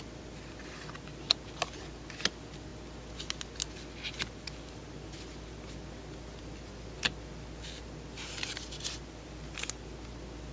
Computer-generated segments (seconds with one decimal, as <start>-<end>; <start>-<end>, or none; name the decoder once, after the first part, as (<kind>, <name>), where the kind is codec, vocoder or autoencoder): none